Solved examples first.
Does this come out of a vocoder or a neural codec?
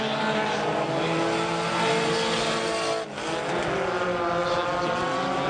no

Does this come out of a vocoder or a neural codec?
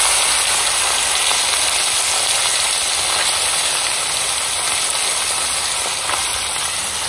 no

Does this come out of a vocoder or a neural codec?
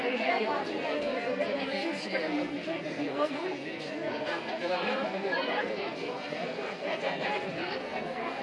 yes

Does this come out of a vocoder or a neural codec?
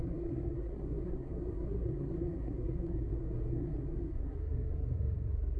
yes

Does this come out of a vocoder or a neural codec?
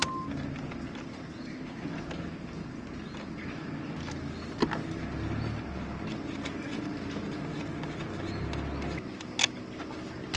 no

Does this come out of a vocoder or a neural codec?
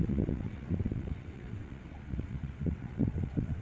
yes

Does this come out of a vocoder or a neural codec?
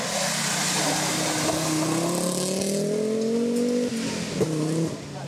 no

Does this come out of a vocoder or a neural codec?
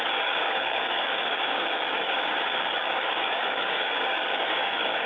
yes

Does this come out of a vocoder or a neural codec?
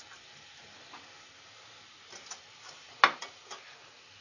no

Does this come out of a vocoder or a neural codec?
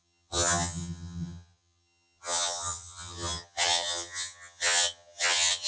yes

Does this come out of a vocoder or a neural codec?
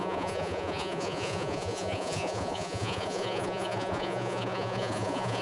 yes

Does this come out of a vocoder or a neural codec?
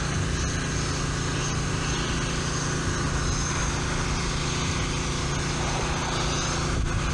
no